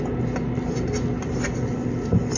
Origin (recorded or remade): recorded